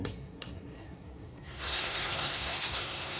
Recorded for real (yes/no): no